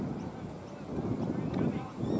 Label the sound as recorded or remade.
recorded